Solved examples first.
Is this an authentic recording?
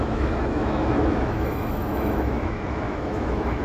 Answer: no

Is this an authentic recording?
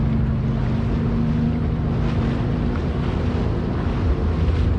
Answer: yes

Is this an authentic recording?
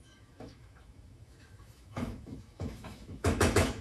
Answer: no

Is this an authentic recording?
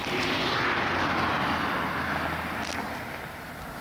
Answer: yes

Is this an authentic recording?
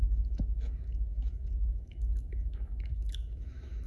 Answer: no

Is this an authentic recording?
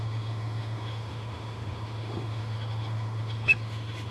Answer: no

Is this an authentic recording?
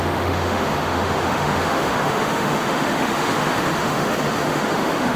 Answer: no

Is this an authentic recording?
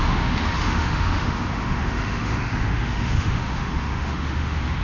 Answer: no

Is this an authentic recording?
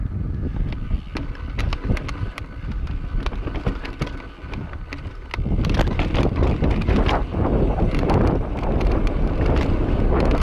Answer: yes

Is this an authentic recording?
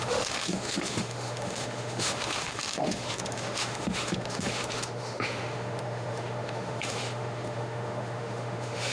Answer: no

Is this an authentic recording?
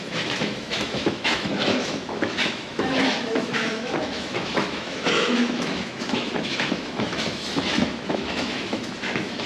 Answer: no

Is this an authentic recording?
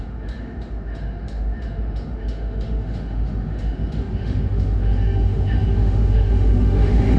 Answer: no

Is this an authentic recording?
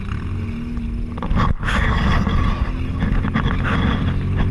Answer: yes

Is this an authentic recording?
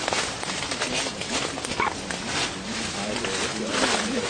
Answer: yes